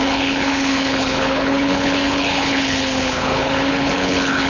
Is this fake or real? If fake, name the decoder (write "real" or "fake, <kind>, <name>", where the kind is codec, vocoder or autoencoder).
fake, codec, HILCodec